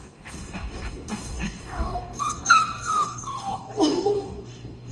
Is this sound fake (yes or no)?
yes